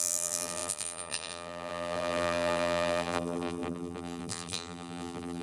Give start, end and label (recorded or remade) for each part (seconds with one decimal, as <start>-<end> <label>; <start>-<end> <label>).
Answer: 0.0-5.4 remade